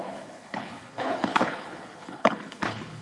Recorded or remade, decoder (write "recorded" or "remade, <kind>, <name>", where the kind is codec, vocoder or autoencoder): remade, codec, HILCodec